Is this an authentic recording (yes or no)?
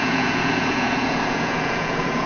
no